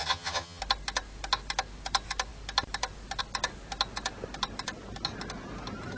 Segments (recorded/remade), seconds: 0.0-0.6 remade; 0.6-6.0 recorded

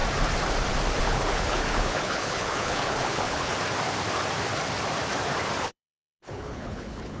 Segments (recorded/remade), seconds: 0.0-1.0 recorded; 1.0-3.5 remade; 3.5-5.6 recorded; 5.6-7.2 remade

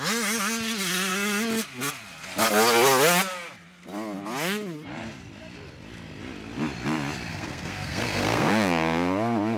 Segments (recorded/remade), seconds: 0.0-7.3 recorded; 7.3-8.5 remade; 8.5-9.6 recorded

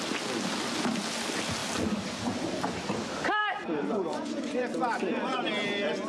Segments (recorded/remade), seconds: 0.0-3.4 recorded; 3.4-5.5 remade; 5.5-6.1 recorded